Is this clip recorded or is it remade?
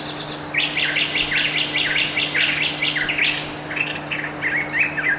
recorded